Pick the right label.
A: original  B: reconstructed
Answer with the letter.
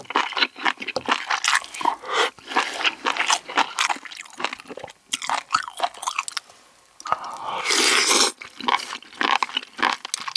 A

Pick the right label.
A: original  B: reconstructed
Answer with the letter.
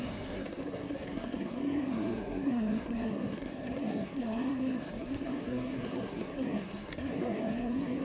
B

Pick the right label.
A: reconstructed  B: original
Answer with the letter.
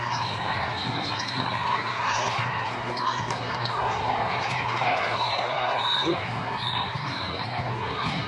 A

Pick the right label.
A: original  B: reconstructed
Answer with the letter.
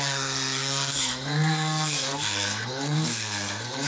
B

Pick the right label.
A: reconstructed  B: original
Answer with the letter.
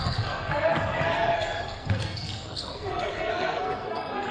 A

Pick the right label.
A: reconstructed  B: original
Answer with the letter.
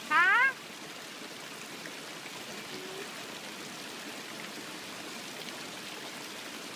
B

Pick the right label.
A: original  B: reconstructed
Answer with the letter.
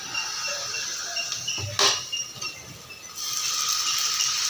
A